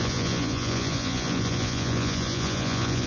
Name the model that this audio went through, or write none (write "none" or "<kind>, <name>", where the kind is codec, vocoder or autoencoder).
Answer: vocoder, Vocos